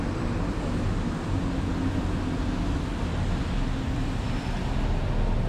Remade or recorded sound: recorded